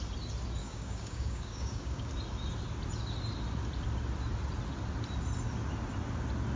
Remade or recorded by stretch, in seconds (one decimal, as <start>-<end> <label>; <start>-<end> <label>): 0.0-0.6 recorded; 0.6-2.1 remade; 2.1-6.6 recorded